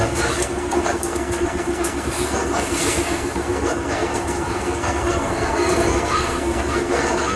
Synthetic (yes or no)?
yes